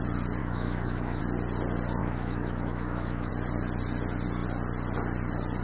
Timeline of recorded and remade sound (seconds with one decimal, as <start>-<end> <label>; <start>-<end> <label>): 0.0-0.4 recorded; 0.4-1.2 remade; 1.2-2.0 recorded; 2.0-3.3 remade; 3.3-5.6 recorded